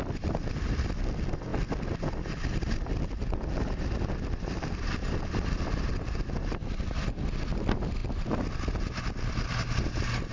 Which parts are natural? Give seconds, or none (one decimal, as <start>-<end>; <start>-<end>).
0.0-10.3